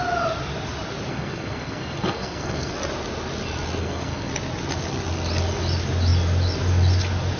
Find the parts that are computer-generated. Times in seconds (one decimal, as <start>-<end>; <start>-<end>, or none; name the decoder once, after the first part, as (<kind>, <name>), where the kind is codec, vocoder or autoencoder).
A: 1.1-2.7 (codec, SNAC); 3.8-4.3